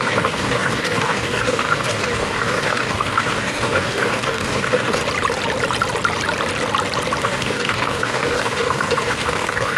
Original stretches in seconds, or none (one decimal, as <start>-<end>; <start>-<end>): 5.0-7.2